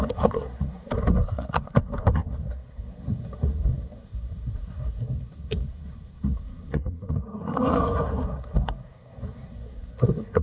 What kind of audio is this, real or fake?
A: fake